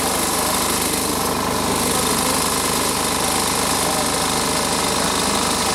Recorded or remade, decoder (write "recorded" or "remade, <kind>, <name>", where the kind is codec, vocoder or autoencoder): recorded